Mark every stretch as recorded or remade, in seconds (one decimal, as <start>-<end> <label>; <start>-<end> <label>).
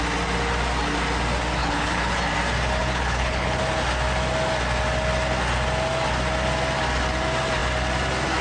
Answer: 0.0-1.6 recorded; 1.6-2.2 remade; 2.2-2.8 recorded; 2.8-3.6 remade; 3.6-8.4 recorded